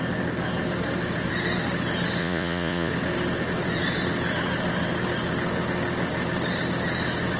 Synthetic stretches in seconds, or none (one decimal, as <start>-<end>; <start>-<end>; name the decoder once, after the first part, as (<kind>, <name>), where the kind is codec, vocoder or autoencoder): 2.2-2.9 (vocoder, Vocos)